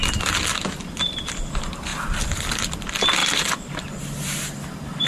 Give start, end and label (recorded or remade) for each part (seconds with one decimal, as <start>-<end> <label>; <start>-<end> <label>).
0.0-5.1 recorded